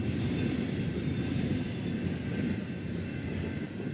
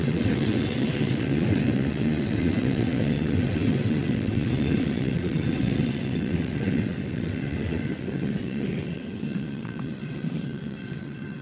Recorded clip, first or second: first